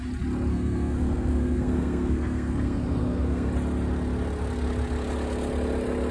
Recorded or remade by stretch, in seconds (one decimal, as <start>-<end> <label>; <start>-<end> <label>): 0.0-0.5 recorded; 0.5-3.5 remade; 3.5-6.1 recorded